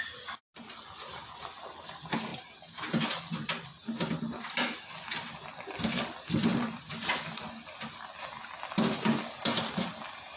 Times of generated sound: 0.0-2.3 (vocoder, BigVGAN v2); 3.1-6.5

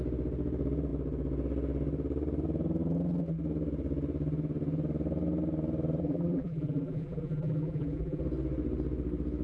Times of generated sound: 6.0-8.2 (vocoder, BigVGAN v2)

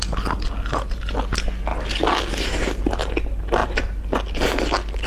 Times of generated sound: none

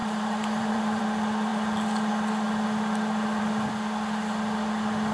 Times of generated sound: 0.0-1.0 (vocoder, BigVGAN v2)